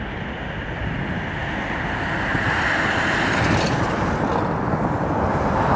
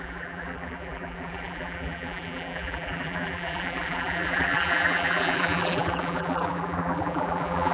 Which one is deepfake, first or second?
second